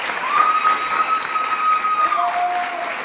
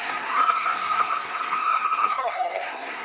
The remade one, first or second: second